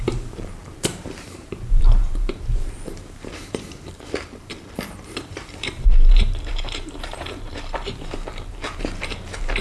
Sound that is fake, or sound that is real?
fake